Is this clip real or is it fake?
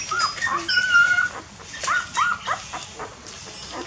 real